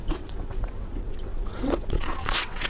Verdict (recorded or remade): remade